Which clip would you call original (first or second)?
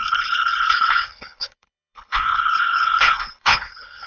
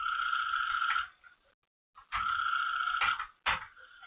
second